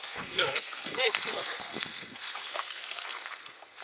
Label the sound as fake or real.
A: fake